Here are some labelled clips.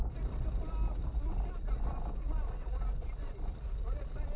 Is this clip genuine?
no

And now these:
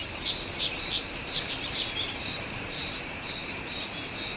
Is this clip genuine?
no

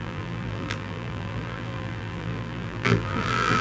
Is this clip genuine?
no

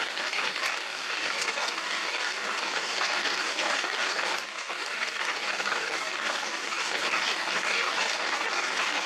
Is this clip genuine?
no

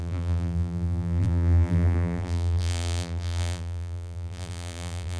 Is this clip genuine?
no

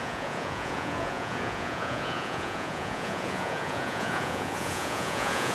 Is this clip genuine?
no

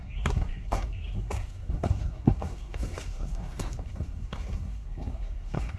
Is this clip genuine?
no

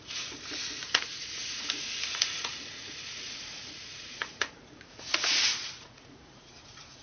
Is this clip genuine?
no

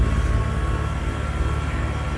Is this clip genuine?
yes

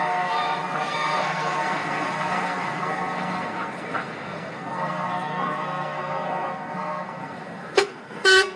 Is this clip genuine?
no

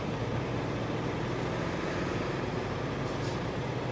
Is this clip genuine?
no